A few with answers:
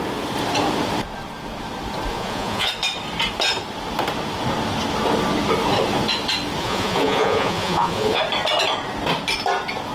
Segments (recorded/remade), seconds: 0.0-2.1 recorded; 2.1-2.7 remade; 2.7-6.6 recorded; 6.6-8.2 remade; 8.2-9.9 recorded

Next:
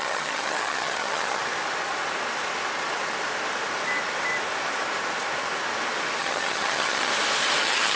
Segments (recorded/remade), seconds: 0.0-1.4 remade; 1.4-6.2 recorded; 6.2-7.1 remade; 7.1-7.6 recorded; 7.6-8.0 remade

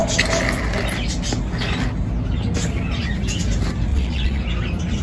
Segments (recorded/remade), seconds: 0.0-3.9 recorded; 3.9-4.4 remade; 4.4-5.0 recorded

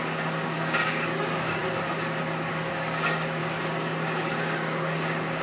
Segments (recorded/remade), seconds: 0.0-1.6 remade; 1.6-2.5 recorded; 2.5-5.4 remade

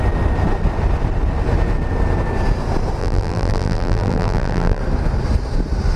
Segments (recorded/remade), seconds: 0.0-3.0 recorded; 3.0-4.8 remade; 4.8-6.0 recorded